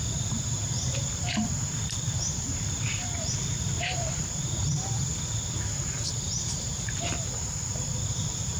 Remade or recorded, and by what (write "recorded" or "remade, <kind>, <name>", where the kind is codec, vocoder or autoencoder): remade, vocoder, BigVGAN v2